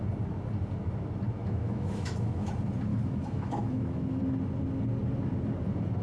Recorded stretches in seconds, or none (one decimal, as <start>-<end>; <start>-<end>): 0.0-1.4; 2.5-2.9; 4.2-6.0